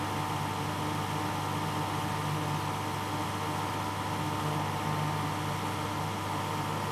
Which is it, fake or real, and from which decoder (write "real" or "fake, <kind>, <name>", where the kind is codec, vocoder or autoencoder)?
real